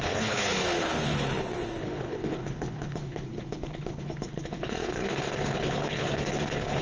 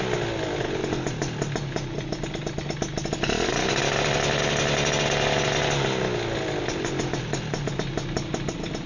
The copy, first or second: first